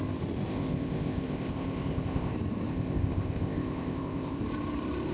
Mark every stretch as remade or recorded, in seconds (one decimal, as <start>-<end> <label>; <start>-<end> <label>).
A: 0.0-0.5 recorded; 0.5-2.3 remade; 2.3-2.7 recorded; 2.7-4.4 remade; 4.4-5.1 recorded

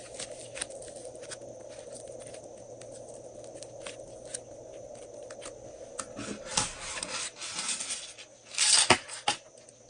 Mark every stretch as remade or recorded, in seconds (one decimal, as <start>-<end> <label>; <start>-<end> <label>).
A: 0.0-6.5 recorded; 6.5-7.3 remade; 7.3-9.9 recorded

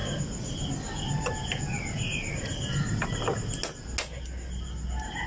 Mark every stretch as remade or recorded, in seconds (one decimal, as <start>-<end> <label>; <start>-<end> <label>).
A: 0.0-5.3 recorded

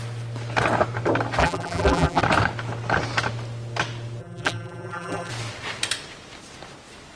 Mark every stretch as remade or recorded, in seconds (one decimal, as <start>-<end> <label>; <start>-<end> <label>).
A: 0.0-1.4 recorded; 1.4-2.2 remade; 2.2-4.2 recorded; 4.2-5.3 remade; 5.3-7.2 recorded